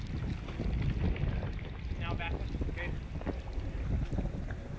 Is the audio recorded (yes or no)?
yes